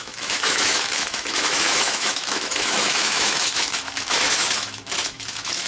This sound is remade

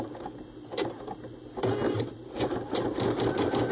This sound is recorded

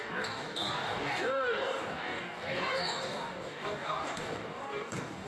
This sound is remade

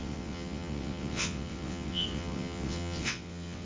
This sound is remade